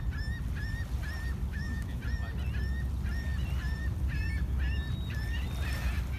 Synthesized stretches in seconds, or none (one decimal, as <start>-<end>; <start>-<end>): 1.5-2.0